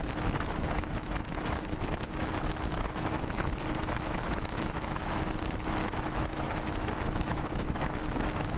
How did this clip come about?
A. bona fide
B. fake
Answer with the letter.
B